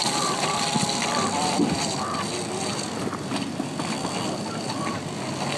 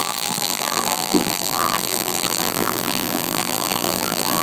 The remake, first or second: second